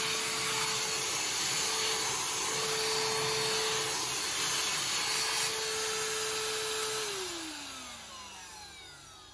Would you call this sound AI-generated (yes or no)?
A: no